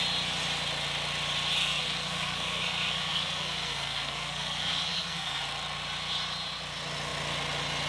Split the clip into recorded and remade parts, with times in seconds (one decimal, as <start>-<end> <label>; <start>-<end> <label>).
0.0-1.6 recorded; 1.6-5.4 remade; 5.4-7.9 recorded